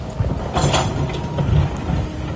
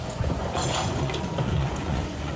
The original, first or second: first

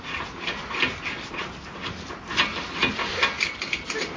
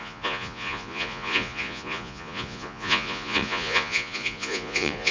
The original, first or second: first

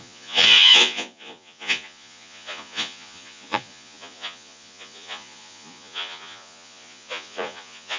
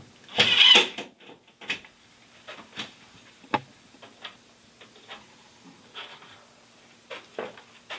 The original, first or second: second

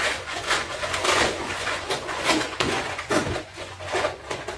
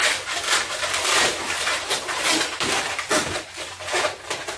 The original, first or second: second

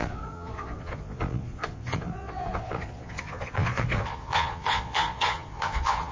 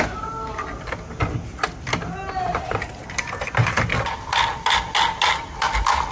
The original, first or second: second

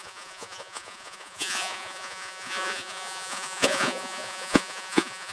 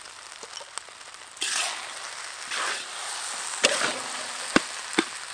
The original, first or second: second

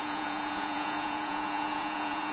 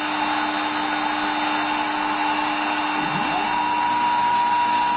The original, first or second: second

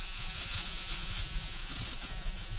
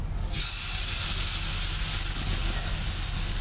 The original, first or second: second